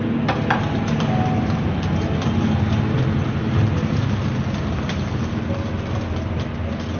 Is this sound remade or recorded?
recorded